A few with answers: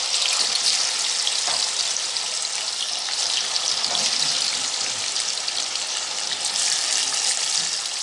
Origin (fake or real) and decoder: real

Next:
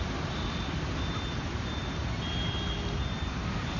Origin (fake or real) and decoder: real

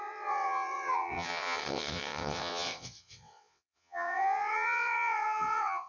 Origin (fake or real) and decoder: fake, vocoder, WaveNeXt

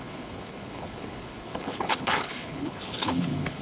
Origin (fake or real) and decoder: fake, codec, HILCodec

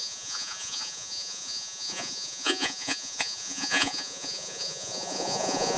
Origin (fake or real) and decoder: fake, vocoder, Vocos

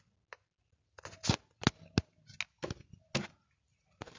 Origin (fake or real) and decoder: real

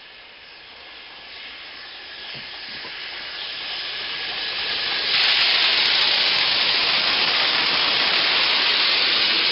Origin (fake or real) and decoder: real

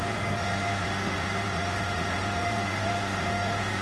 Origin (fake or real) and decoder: fake, autoencoder, DAC-VAE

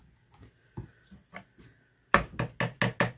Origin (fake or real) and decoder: real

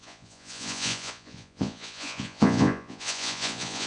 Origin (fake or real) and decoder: fake, vocoder, Vocos